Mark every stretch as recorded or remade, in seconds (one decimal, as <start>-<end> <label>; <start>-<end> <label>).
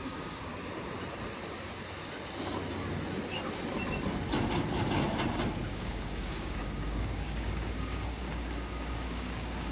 0.0-0.5 remade; 0.5-5.5 recorded; 5.5-9.7 remade